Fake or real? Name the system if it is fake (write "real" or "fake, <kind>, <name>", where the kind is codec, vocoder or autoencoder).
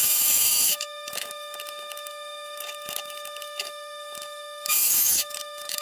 fake, autoencoder, DAC-VAE